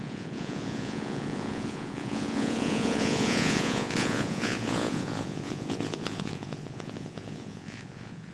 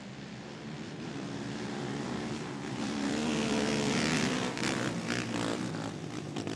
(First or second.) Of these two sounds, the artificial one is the first